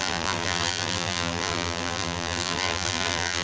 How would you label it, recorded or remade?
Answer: remade